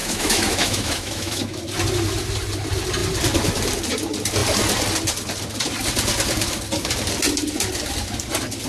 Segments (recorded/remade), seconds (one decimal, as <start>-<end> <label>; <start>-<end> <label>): 0.0-1.6 remade; 1.6-8.7 recorded

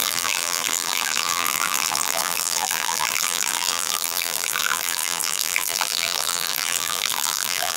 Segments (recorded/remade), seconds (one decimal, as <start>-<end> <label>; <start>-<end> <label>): 0.0-7.8 remade

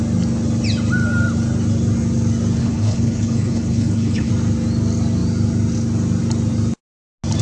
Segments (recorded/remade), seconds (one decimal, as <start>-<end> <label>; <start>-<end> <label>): 0.0-2.6 recorded; 2.6-4.3 remade; 4.3-7.4 recorded

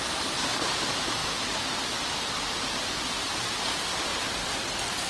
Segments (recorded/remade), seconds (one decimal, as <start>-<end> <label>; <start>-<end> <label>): 0.0-4.1 remade; 4.1-5.1 recorded

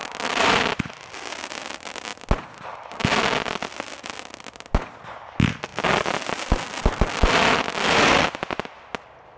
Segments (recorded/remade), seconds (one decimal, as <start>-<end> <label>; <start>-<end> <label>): 0.0-9.4 recorded

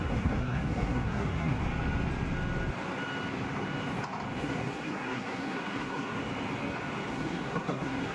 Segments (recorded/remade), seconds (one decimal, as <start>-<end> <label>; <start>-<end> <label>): 0.0-1.6 remade; 1.6-4.4 recorded; 4.4-6.2 remade; 6.2-7.1 recorded; 7.1-8.1 remade

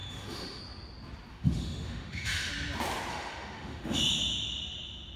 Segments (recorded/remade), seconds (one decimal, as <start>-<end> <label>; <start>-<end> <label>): 0.0-0.6 remade; 0.6-1.3 recorded; 1.3-2.5 remade; 2.5-3.1 recorded; 3.1-4.0 remade; 4.0-5.2 recorded